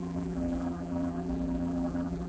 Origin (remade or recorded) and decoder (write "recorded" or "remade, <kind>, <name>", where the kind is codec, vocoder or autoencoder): remade, vocoder, BigVGAN v2